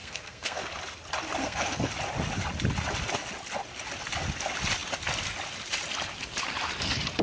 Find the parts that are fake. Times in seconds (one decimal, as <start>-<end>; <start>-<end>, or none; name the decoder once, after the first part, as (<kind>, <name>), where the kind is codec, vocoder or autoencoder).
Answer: 0.0-0.6 (codec, SNAC); 1.4-1.9